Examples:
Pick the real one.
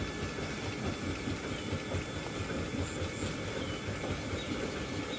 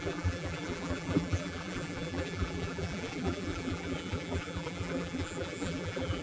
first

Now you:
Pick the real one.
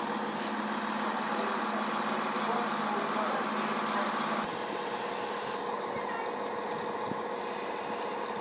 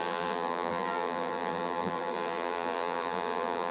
first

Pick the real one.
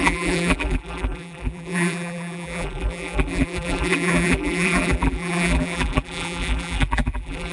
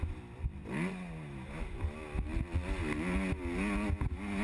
second